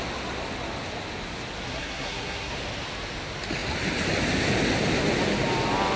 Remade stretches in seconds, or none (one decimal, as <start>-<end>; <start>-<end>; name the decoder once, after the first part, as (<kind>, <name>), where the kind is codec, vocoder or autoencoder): 1.7-2.5 (codec, SNAC)